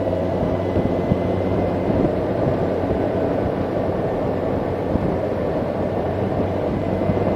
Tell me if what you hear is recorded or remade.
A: remade